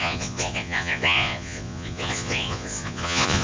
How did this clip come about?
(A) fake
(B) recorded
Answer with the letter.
A